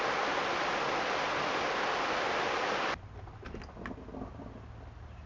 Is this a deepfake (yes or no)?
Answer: no